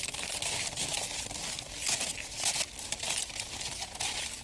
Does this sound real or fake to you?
real